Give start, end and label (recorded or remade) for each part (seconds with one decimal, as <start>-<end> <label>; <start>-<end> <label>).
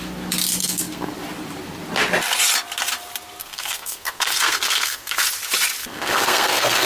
0.0-0.6 recorded; 0.6-1.1 remade; 1.1-3.4 recorded; 3.4-5.3 remade; 5.3-5.8 recorded; 5.8-6.9 remade